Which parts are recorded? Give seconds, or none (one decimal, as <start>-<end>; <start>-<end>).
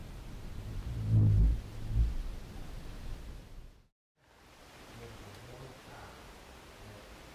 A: 0.6-5.4; 5.9-7.3